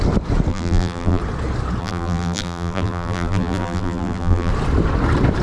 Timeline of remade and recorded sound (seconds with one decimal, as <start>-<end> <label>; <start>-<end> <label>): 0.0-0.5 recorded; 0.5-1.2 remade; 1.2-1.8 recorded; 1.8-4.5 remade; 4.5-5.4 recorded